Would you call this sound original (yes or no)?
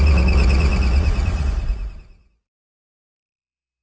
no